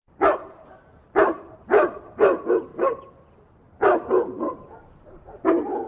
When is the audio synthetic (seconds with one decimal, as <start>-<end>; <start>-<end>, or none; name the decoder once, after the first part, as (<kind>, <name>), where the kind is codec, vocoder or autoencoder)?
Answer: none